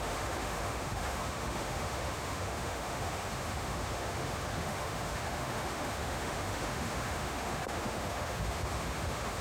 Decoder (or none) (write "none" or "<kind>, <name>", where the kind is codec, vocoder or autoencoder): autoencoder, DAC-VAE